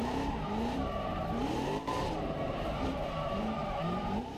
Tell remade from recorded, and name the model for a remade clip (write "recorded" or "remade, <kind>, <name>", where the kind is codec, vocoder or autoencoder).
remade, vocoder, BigVGAN v2